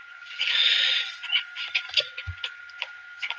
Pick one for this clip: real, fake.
fake